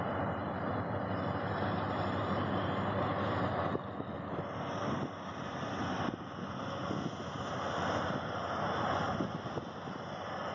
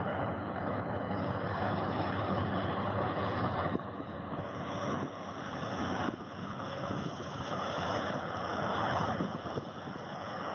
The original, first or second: first